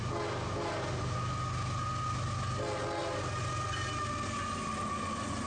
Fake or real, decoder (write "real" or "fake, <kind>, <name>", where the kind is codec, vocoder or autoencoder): real